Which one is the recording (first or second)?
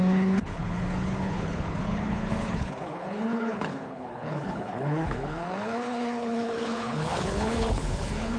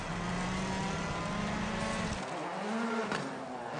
second